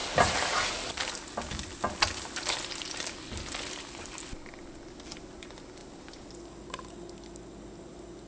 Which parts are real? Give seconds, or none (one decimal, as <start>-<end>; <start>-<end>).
0.0-8.3